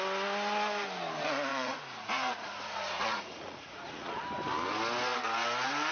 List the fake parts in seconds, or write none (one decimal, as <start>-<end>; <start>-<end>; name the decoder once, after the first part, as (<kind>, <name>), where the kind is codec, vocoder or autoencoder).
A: 1.5-4.1 (vocoder, Vocos)